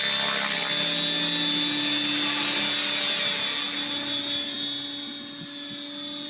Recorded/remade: recorded